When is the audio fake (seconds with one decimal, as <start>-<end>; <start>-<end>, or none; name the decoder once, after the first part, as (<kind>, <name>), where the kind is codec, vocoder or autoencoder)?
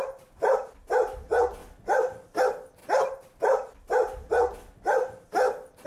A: none